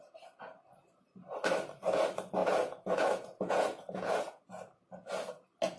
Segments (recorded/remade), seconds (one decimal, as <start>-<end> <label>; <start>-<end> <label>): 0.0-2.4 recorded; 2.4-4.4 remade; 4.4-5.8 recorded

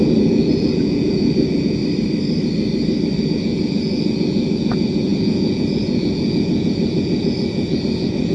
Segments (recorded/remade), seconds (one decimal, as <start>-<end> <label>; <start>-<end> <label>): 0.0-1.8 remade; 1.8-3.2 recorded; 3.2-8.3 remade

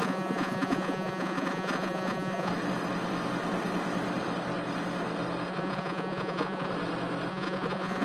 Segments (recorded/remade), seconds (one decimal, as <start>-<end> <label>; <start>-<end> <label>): 0.0-2.5 remade; 2.5-5.5 recorded; 5.5-6.7 remade; 6.7-7.3 recorded; 7.3-8.0 remade